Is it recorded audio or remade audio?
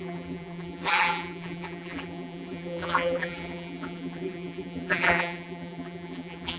remade